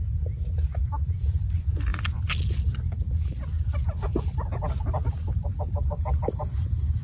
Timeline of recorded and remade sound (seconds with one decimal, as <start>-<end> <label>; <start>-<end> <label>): 0.0-7.0 recorded